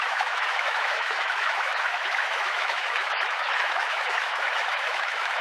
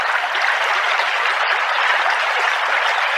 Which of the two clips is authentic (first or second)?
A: second